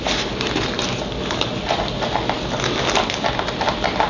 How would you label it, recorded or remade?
recorded